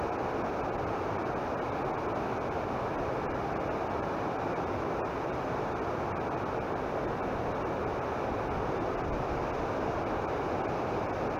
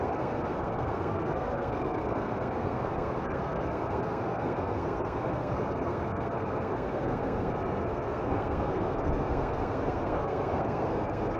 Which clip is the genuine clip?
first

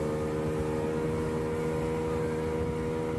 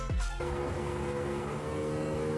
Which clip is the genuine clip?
first